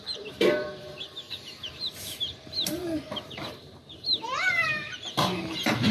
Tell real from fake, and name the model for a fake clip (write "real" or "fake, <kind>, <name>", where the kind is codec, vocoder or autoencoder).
fake, vocoder, BigVGAN v2